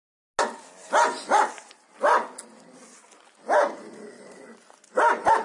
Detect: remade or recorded recorded